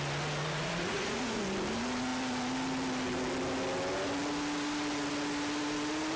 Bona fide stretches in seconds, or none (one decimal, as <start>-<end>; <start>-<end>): 0.0-0.4; 1.4-6.2